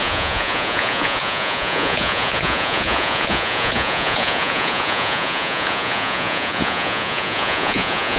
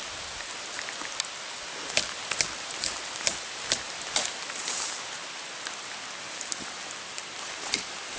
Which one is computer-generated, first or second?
first